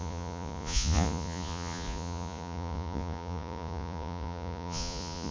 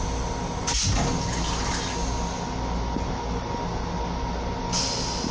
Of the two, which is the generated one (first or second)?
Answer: first